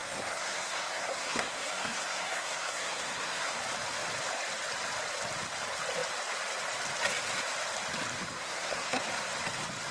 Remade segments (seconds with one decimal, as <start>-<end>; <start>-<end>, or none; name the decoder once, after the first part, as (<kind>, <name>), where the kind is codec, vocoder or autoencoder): 0.0-3.6 (codec, SNAC); 8.3-9.0